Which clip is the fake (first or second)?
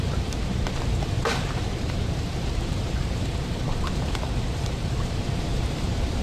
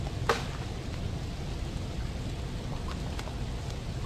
first